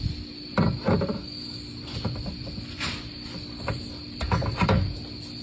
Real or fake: real